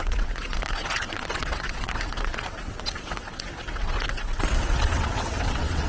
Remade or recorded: remade